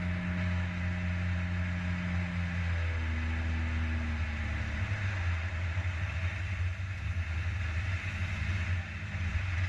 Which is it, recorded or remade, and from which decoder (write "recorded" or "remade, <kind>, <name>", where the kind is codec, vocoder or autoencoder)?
recorded